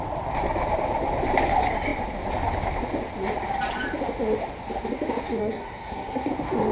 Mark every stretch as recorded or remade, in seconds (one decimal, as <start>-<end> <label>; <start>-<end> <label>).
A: 0.0-5.4 recorded; 5.4-6.3 remade; 6.3-6.7 recorded